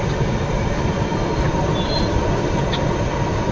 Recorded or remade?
recorded